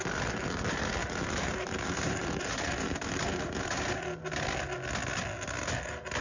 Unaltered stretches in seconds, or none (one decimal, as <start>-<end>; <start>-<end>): 0.0-1.0; 3.9-6.2